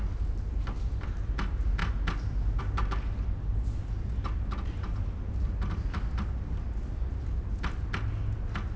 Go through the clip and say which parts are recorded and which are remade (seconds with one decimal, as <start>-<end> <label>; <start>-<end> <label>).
0.0-8.8 recorded